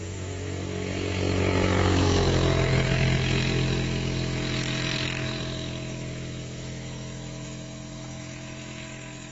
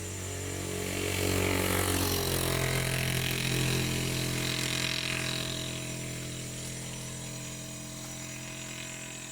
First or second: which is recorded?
second